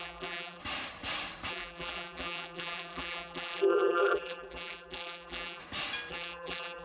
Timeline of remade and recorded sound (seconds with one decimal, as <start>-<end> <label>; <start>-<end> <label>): 0.0-0.6 remade; 0.6-1.5 recorded; 1.5-5.6 remade; 5.6-6.1 recorded; 6.1-6.8 remade